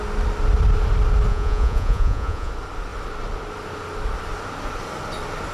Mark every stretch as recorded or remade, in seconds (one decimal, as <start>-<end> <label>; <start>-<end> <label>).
0.0-1.3 recorded; 1.3-2.5 remade; 2.5-5.5 recorded